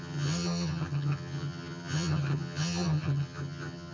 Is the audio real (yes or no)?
no